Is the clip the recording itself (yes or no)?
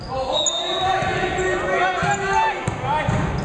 yes